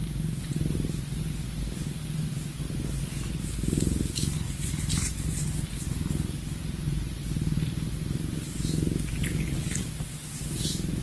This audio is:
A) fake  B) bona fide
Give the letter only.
B